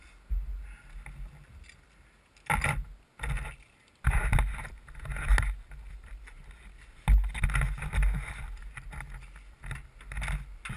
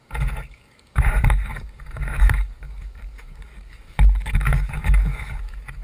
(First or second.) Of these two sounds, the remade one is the second